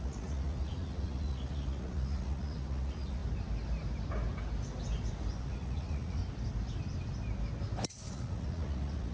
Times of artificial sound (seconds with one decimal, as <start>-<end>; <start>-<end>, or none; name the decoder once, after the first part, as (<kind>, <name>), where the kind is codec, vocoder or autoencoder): 0.0-3.2 (vocoder, Vocos); 5.4-6.2; 8.1-9.1